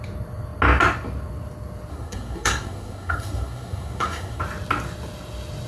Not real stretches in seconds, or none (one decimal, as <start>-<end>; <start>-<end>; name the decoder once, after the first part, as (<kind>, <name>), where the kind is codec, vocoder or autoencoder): 1.9-4.4 (codec, SNAC)